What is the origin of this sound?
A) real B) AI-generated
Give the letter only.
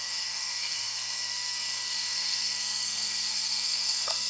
B